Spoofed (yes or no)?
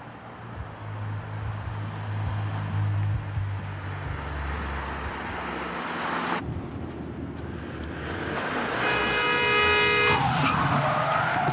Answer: no